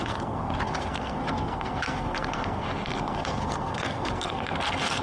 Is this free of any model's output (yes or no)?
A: no